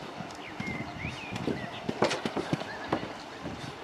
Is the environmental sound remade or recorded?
recorded